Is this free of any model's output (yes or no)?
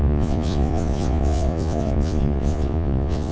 no